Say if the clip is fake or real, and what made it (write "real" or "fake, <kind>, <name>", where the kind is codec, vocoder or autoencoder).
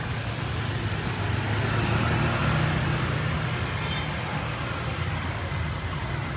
real